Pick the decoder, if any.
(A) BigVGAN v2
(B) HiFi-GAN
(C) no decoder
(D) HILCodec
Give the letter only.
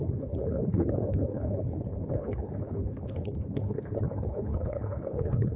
D